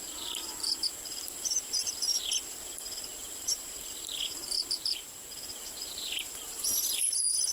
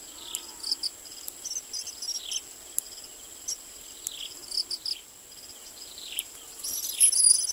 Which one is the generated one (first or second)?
first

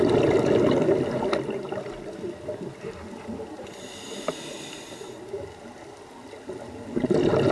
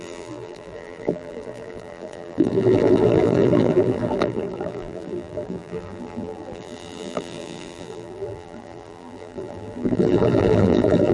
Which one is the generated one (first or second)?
second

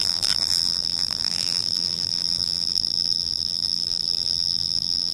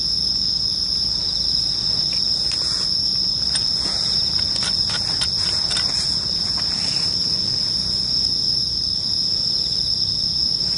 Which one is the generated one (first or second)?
first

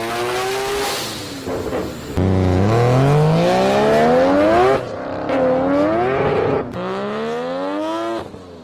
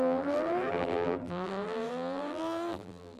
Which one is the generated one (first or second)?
second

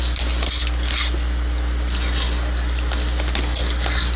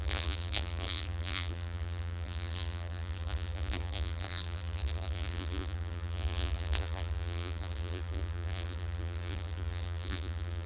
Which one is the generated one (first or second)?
second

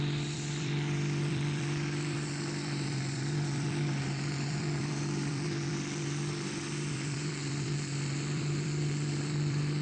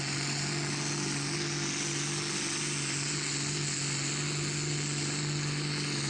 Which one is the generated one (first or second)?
first